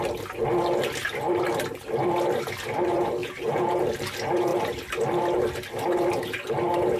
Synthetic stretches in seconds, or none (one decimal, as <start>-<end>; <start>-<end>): 3.2-3.8